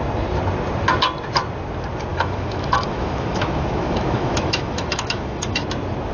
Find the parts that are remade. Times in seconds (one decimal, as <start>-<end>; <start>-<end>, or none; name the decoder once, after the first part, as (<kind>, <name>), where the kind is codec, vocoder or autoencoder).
2.1-5.6 (autoencoder, DAC-VAE)